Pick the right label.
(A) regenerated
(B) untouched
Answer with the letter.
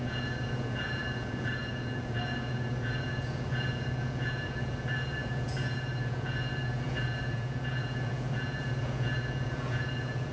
A